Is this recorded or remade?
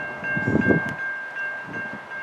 recorded